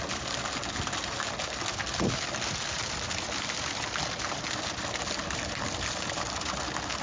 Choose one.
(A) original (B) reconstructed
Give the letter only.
A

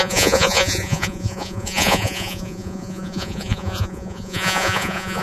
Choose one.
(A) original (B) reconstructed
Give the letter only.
B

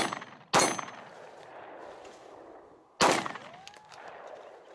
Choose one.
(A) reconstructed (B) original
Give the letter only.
B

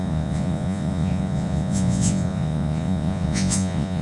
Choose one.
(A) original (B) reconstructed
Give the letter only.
B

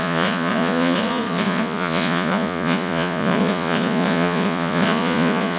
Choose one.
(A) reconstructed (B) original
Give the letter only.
A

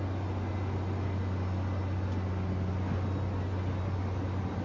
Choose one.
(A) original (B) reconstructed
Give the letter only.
A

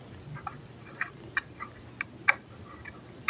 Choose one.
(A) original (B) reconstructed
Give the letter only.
A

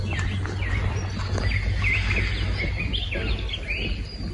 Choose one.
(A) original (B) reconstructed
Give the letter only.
A